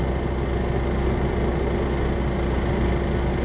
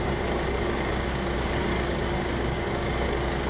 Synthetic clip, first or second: second